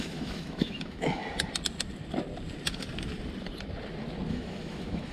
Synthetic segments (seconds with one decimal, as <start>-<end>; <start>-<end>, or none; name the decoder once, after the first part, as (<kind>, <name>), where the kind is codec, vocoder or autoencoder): 0.0-1.2 (autoencoder, DAC-VAE); 4.3-5.1